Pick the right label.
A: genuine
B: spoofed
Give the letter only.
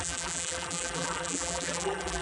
B